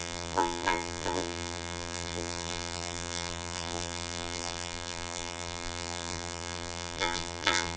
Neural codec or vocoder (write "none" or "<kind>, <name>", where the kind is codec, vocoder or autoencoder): vocoder, BigVGAN v2